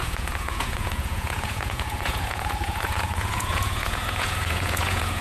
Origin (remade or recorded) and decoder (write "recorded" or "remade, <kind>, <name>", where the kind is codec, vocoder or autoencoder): remade, vocoder, Vocos